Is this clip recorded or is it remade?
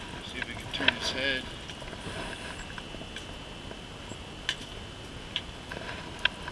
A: recorded